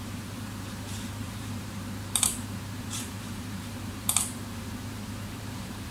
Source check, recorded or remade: remade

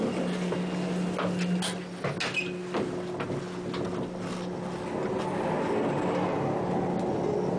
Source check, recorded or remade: recorded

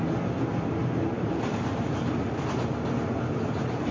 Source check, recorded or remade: recorded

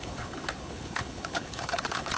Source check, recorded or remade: remade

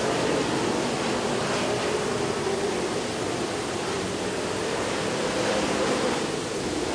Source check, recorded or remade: remade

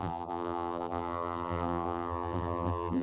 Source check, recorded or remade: remade